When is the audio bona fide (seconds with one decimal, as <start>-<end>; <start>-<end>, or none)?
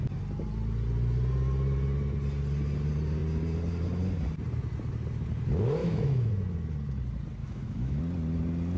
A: 0.0-5.8; 6.3-7.4; 8.0-8.8